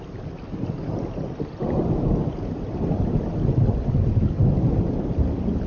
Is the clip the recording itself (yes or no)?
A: yes